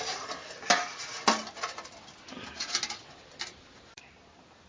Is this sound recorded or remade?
recorded